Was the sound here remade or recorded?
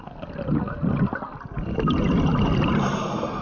recorded